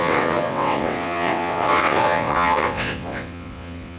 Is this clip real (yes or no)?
no